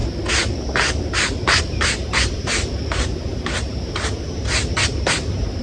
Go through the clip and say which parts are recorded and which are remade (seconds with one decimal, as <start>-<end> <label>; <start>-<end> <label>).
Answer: 0.0-1.6 recorded; 1.6-5.6 remade